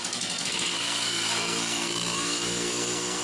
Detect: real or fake fake